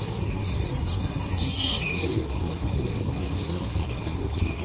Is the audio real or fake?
fake